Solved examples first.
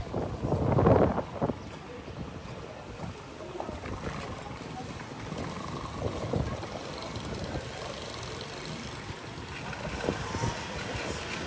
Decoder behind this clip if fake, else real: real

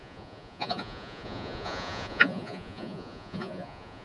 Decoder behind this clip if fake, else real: fake, vocoder, Vocos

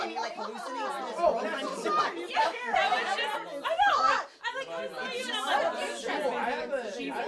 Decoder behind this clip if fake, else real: real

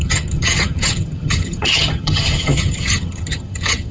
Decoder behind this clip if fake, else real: fake, vocoder, HiFi-GAN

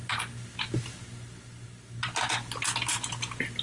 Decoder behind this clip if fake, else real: real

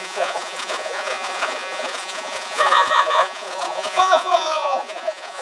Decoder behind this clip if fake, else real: fake, vocoder, Vocos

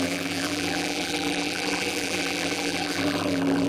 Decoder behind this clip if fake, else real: fake, vocoder, BigVGAN v2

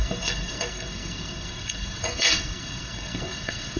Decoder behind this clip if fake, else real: fake, codec, SNAC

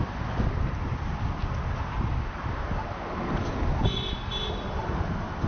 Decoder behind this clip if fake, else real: real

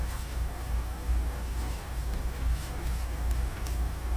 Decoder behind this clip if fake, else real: fake, codec, DAC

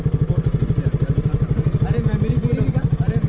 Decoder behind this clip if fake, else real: real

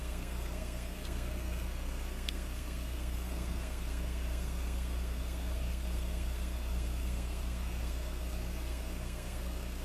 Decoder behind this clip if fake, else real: fake, codec, SNAC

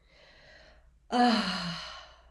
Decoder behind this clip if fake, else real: real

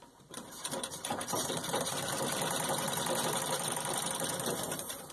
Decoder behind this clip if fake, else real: fake, vocoder, BigVGAN v2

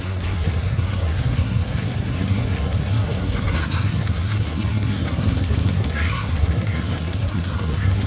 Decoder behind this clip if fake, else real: fake, codec, SNAC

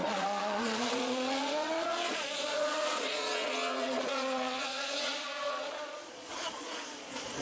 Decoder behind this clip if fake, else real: fake, vocoder, Vocos